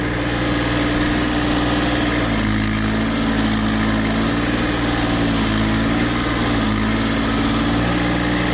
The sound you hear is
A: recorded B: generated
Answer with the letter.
A